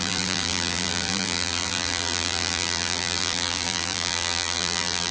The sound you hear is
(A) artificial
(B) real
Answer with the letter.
A